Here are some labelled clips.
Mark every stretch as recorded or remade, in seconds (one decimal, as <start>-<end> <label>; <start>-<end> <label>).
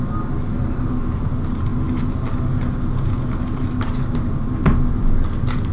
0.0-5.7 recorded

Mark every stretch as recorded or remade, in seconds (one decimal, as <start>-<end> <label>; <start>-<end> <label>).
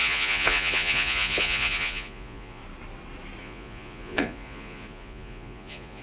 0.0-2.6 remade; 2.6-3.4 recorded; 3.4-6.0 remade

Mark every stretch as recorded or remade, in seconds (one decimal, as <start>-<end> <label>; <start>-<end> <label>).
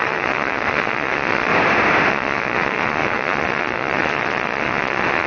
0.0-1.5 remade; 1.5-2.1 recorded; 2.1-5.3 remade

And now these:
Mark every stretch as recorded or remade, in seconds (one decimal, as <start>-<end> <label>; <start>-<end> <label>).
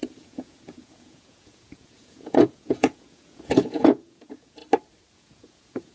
0.0-4.6 remade; 4.6-5.1 recorded; 5.1-5.9 remade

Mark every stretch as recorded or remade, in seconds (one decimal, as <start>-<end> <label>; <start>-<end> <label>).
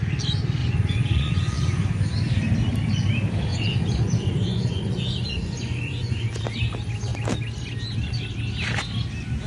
0.0-0.6 recorded; 0.6-1.8 remade; 1.8-3.5 recorded; 3.5-6.2 remade; 6.2-9.5 recorded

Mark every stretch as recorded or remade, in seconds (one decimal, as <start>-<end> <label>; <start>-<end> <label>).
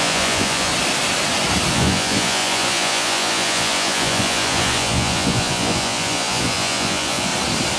0.0-0.7 remade; 0.7-1.7 recorded; 1.7-7.3 remade; 7.3-7.8 recorded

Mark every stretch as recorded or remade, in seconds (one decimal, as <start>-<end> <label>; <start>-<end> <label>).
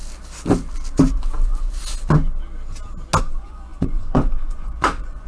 0.0-3.2 recorded; 3.2-5.3 remade